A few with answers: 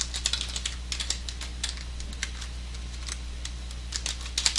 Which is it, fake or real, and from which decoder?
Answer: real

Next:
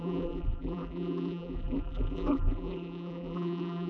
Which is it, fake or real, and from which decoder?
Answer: fake, vocoder, BigVGAN v2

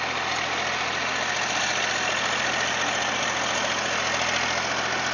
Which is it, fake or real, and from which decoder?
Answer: real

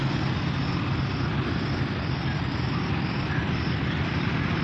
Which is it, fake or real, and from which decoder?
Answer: real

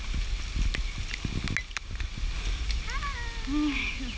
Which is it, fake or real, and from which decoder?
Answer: real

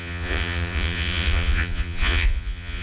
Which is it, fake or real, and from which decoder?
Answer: fake, vocoder, Vocos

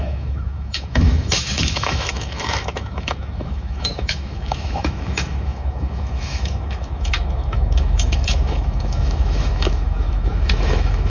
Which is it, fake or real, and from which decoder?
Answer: fake, autoencoder, DAC-VAE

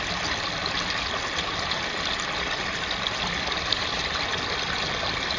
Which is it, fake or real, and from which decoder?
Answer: real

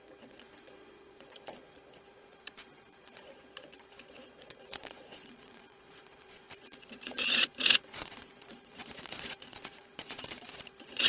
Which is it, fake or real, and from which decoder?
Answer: fake, vocoder, Vocos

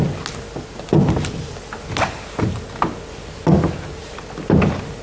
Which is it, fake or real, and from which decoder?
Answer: real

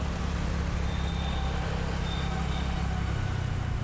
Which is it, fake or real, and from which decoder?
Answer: real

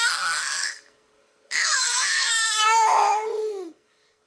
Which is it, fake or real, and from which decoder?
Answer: fake, codec, SNAC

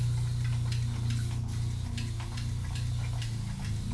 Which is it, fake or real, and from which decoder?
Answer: real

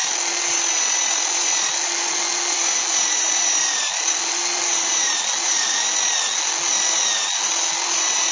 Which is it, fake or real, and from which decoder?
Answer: real